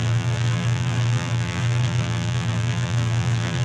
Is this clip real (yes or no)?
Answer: no